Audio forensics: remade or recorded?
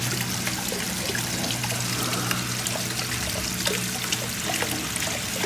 recorded